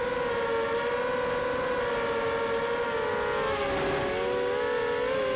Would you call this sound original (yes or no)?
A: yes